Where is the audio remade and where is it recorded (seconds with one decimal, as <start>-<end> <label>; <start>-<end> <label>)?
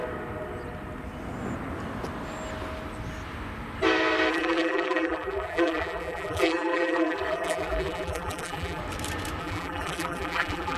0.0-4.3 recorded; 4.3-8.8 remade; 8.8-9.4 recorded; 9.4-10.8 remade